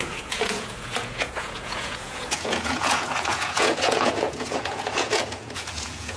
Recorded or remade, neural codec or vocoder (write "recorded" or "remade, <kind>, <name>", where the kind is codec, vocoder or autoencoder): remade, vocoder, Vocos